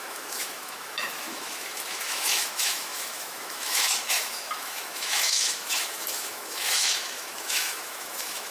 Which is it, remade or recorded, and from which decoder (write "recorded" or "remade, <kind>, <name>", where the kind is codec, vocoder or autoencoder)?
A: remade, autoencoder, DAC-VAE